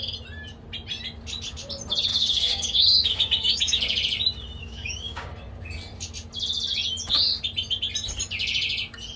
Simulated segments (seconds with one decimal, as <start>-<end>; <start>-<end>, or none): 2.1-3.8; 4.6-5.3